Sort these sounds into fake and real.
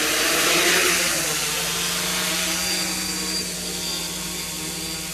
real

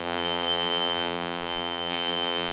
fake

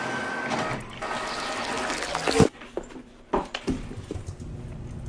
real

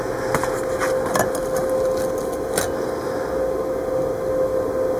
real